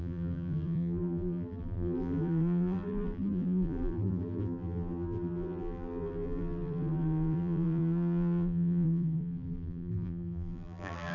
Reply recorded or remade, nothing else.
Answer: remade